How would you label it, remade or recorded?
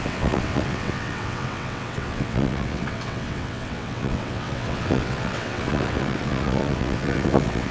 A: remade